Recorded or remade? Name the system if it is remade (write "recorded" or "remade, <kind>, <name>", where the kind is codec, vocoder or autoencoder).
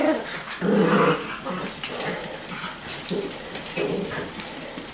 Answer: recorded